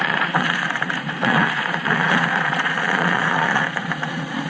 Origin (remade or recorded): remade